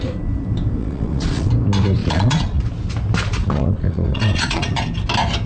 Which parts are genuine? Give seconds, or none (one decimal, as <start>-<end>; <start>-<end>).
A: 0.0-0.8; 1.5-2.0; 2.6-3.4; 4.8-5.5